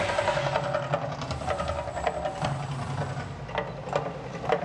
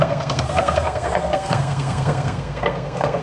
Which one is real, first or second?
first